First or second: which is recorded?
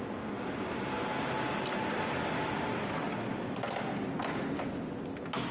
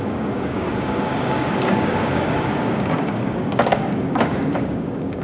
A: first